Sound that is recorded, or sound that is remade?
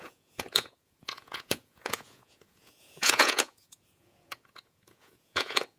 remade